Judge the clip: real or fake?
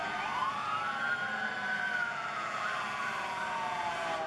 fake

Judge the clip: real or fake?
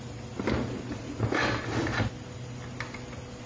real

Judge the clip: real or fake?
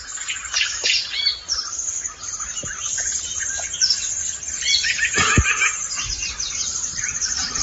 fake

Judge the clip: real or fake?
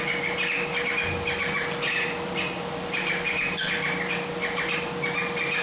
fake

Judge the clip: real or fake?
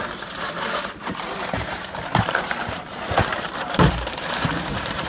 fake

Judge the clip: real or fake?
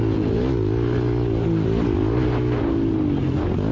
real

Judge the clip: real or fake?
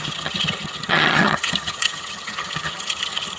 fake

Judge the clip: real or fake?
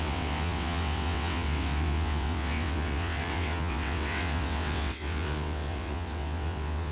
fake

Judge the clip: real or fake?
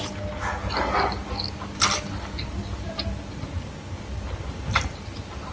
real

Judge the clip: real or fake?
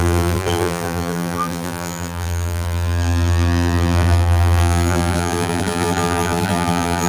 fake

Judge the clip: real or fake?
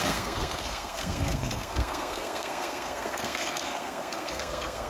fake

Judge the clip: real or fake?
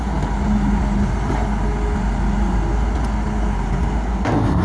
real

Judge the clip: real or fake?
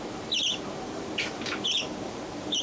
fake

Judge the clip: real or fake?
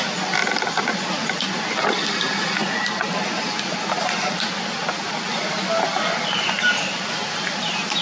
real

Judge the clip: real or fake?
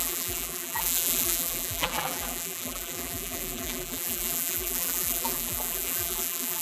fake